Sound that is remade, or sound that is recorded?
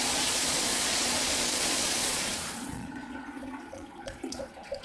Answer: remade